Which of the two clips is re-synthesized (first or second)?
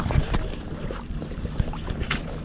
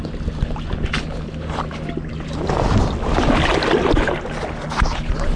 first